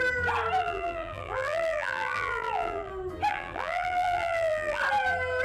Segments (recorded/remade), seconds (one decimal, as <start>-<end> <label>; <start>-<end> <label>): 0.0-0.6 recorded; 0.6-2.9 remade; 2.9-3.3 recorded; 3.3-4.8 remade; 4.8-5.4 recorded